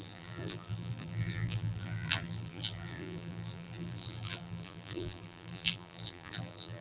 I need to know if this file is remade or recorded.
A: remade